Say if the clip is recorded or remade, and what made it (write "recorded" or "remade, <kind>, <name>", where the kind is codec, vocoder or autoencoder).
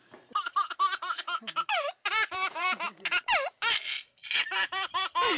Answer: remade, vocoder, BigVGAN v2